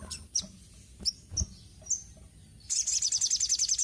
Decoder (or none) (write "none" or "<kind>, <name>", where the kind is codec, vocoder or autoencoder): none